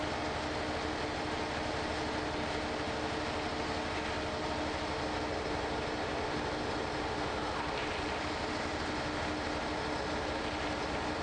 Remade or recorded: recorded